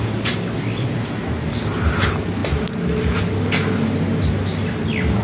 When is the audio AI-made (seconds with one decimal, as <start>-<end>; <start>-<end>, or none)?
none